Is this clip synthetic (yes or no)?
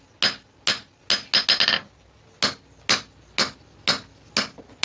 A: no